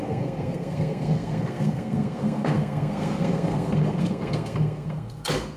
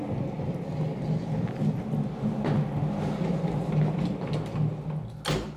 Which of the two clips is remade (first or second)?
first